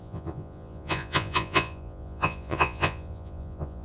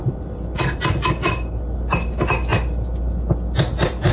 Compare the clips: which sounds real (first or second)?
second